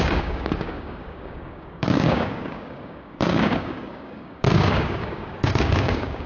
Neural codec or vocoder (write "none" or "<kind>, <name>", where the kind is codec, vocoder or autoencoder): codec, DAC